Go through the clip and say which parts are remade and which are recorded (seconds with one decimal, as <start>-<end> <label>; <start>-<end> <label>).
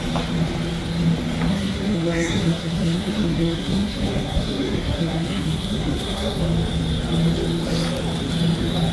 0.0-1.5 recorded; 1.5-6.4 remade; 6.4-8.9 recorded